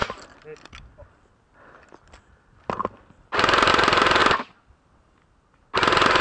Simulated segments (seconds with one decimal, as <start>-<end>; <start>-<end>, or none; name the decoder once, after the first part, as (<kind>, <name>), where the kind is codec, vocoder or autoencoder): none